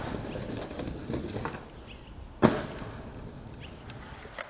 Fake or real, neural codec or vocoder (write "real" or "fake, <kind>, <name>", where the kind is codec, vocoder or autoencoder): real